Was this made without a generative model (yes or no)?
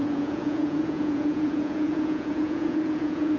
no